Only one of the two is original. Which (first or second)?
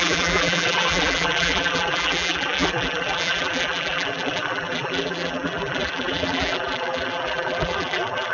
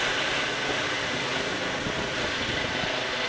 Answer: second